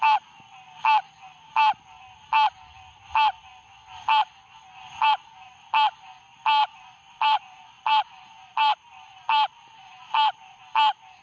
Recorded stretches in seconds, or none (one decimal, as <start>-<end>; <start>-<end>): 0.0-6.6; 10.6-11.2